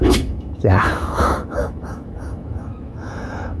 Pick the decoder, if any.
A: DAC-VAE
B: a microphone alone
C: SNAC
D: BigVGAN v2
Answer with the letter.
A